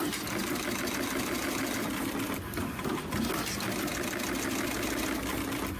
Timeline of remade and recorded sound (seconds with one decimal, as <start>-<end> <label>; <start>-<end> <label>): 0.0-5.8 recorded